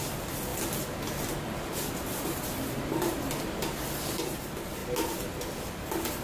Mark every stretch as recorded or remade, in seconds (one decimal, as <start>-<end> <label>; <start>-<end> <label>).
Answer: 0.0-6.2 recorded